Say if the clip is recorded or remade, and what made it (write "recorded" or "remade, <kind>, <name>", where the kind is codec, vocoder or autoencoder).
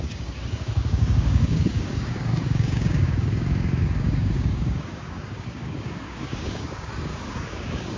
remade, codec, DAC